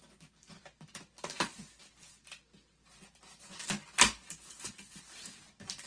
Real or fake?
real